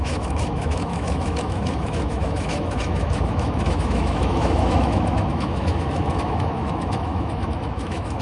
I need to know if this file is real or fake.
fake